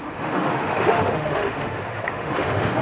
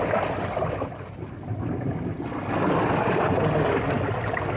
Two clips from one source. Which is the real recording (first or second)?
second